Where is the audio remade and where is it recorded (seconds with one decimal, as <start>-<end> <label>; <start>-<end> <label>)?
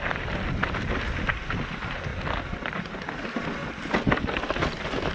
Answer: 0.0-0.6 remade; 0.6-1.7 recorded; 1.7-5.1 remade